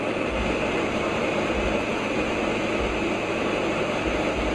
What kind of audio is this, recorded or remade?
recorded